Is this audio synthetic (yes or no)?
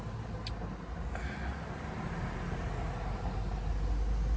no